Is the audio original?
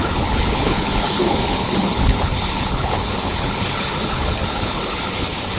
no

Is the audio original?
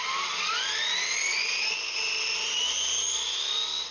yes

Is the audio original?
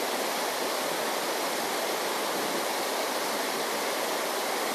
yes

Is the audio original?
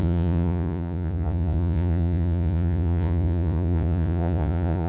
no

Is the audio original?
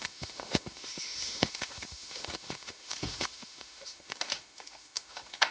no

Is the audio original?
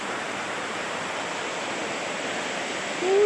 yes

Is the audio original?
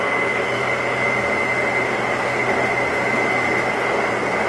yes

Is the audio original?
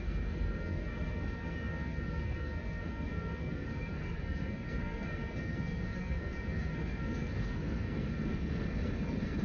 no